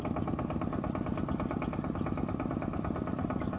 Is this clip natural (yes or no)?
yes